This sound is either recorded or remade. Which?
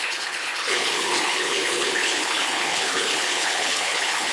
remade